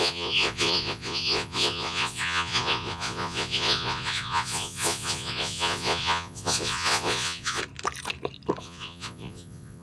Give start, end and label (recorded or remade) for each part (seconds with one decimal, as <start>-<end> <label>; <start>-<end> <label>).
0.0-7.6 remade; 7.6-8.6 recorded; 8.6-9.8 remade